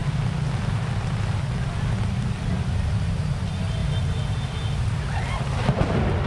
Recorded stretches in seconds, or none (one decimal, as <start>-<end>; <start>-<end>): 3.2-3.8